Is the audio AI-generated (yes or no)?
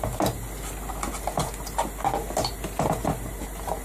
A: no